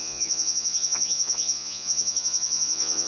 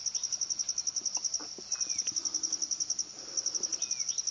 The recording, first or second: second